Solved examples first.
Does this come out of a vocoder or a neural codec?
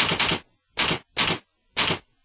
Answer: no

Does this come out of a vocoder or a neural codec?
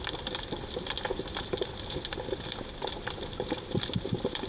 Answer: yes